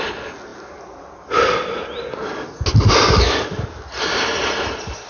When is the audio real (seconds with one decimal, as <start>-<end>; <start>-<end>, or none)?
0.0-5.1